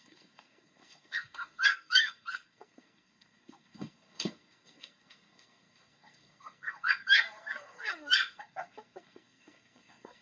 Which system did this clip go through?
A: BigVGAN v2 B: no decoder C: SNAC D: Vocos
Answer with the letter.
C